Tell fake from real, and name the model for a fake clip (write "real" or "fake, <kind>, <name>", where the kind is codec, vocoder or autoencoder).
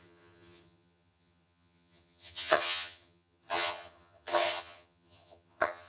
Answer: fake, vocoder, HiFi-GAN